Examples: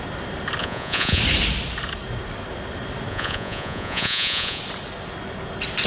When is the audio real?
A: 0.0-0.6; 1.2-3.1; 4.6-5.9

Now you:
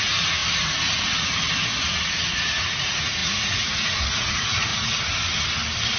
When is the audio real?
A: 0.4-2.4; 4.7-6.0

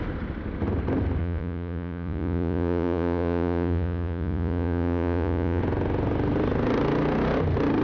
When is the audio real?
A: 0.0-1.2; 5.6-7.8

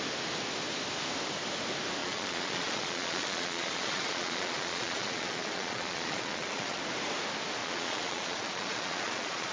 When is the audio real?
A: 0.0-2.0; 6.8-7.6

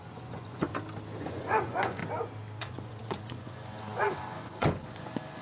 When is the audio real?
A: 0.7-1.2; 2.0-2.6

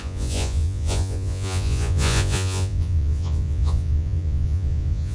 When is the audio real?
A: none

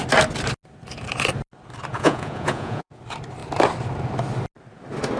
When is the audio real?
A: 0.0-1.9; 3.0-5.2

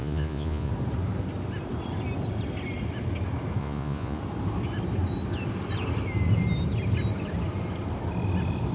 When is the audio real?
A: 0.7-3.6; 4.2-8.7